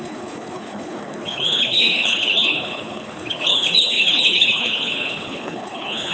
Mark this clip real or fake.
fake